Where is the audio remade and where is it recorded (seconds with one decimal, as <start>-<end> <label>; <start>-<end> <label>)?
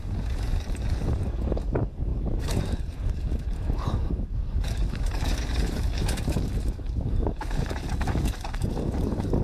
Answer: 0.0-9.4 remade